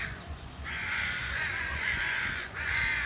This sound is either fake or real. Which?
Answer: fake